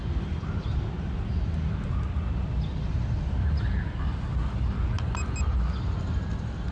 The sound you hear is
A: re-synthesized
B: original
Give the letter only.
B